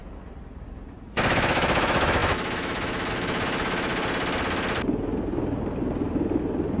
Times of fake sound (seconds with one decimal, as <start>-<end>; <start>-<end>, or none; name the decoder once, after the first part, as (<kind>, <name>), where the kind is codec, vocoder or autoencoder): 1.3-3.9 (autoencoder, DAC-VAE)